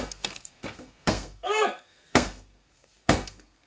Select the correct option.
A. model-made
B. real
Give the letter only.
A